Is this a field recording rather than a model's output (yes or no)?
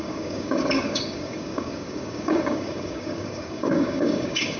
no